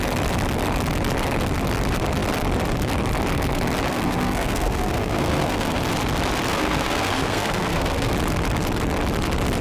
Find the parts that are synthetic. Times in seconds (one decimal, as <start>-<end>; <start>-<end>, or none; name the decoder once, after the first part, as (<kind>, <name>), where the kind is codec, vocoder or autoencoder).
3.9-5.8 (codec, SNAC); 6.5-8.1